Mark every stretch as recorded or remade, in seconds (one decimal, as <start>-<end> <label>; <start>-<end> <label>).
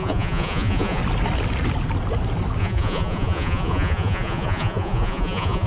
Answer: 0.0-1.0 remade; 1.0-2.6 recorded; 2.6-5.7 remade